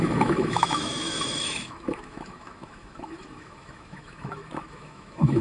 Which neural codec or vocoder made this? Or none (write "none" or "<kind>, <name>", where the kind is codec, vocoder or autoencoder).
autoencoder, DAC-VAE